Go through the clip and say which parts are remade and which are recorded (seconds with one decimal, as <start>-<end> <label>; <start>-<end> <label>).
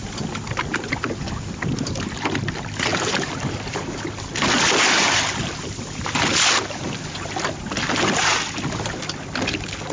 0.0-2.9 recorded; 2.9-3.5 remade; 3.5-9.9 recorded